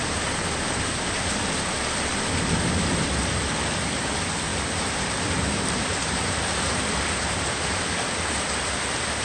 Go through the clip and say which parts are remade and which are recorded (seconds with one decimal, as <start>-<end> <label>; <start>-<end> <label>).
0.0-4.5 recorded; 4.5-7.8 remade; 7.8-9.2 recorded